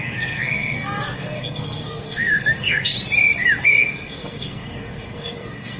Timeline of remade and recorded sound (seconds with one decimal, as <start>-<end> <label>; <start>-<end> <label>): 0.0-2.9 remade; 2.9-3.6 recorded; 3.6-5.8 remade